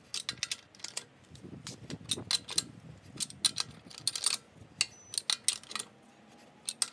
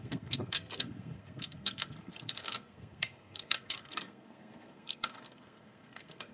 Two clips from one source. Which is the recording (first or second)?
first